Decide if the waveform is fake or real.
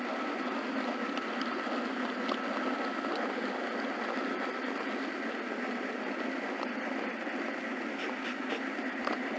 real